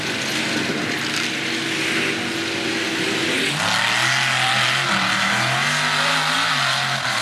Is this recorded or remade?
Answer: recorded